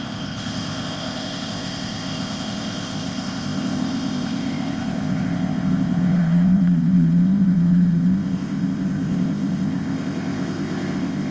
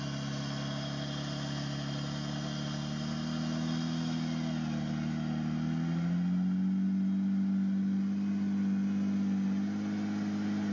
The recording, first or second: second